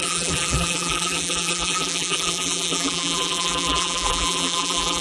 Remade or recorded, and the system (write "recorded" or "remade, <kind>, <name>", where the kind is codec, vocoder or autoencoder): remade, vocoder, BigVGAN v2